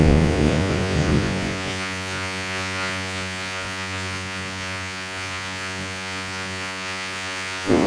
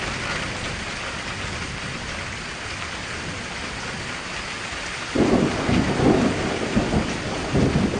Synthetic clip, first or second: first